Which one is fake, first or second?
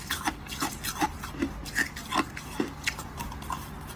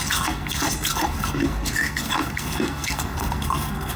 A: second